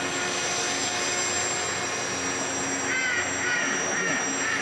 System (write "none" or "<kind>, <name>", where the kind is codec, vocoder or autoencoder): none